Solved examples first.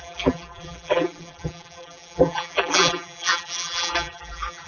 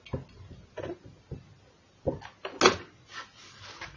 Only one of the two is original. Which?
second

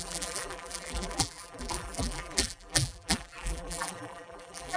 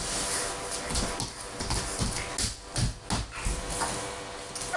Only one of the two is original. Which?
second